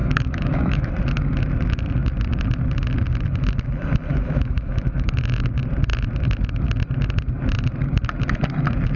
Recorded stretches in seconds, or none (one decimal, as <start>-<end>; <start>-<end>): 0.9-4.1; 5.3-9.0